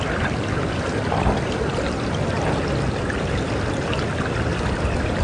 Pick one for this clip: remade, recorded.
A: remade